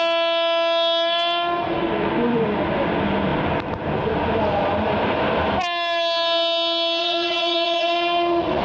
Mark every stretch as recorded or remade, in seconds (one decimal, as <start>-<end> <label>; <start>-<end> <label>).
0.0-7.0 recorded; 7.0-8.6 remade